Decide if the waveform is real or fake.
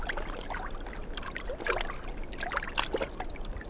real